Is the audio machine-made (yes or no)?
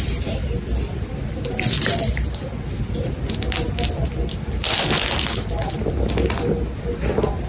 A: no